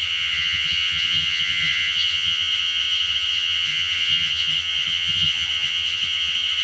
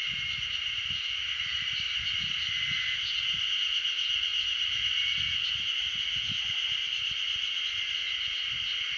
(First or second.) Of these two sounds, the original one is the second